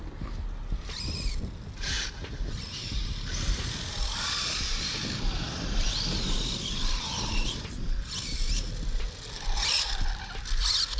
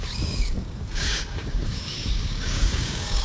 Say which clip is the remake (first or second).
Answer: second